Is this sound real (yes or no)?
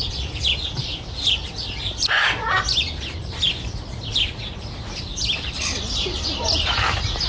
no